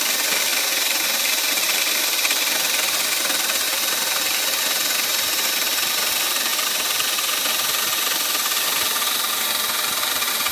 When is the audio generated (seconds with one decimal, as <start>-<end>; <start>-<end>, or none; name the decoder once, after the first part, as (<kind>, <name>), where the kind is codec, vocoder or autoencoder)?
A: 0.0-10.5 (vocoder, BigVGAN v2)